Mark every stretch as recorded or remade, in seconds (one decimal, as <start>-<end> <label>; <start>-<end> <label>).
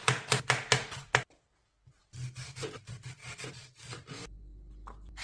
0.0-3.2 recorded; 3.2-4.1 remade; 4.1-5.2 recorded